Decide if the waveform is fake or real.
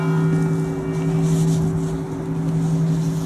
real